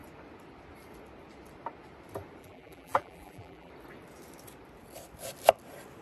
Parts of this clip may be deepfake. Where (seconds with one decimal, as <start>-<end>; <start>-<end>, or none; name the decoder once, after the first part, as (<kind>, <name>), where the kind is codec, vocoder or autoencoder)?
2.4-3.7 (vocoder, BigVGAN v2)